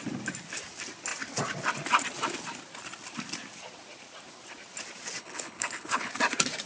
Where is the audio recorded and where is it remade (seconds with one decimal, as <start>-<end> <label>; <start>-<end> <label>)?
0.0-5.2 recorded; 5.2-6.1 remade; 6.1-6.7 recorded